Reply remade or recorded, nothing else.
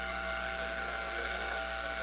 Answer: remade